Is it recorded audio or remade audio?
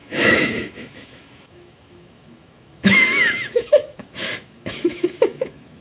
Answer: remade